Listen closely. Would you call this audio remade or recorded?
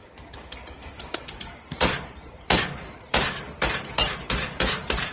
remade